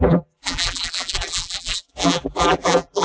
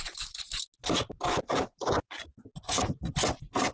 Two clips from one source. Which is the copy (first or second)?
first